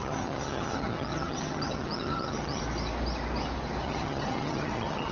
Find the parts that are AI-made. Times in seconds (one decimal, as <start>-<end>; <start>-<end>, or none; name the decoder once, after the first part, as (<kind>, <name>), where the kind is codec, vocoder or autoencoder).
0.0-2.6 (vocoder, HiFi-GAN); 3.8-5.1